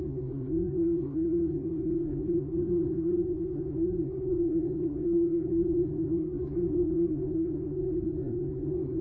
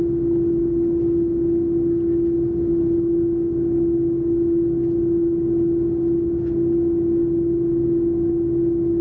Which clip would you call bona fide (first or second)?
second